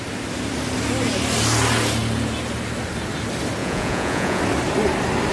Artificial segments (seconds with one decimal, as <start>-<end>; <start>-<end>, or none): 3.6-4.4